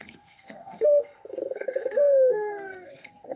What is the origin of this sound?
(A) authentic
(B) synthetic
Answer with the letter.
B